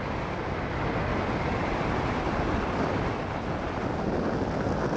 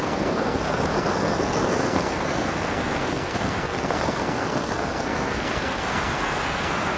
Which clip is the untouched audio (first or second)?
first